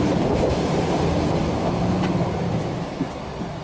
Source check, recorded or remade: recorded